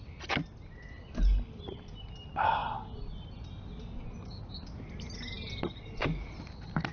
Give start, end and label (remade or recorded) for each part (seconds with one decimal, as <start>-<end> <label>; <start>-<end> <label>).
0.0-6.9 recorded